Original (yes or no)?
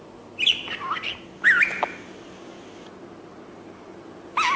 yes